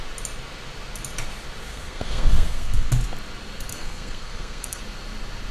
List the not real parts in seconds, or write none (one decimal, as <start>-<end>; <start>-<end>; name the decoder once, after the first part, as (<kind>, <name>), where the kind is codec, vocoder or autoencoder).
1.7-2.9 (codec, SNAC); 3.7-4.8